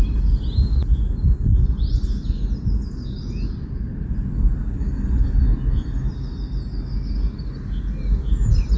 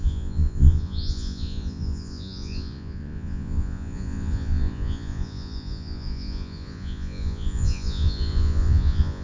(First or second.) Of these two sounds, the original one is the first